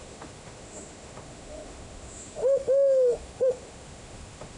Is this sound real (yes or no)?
no